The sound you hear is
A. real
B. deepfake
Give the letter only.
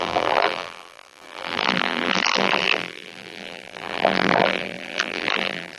B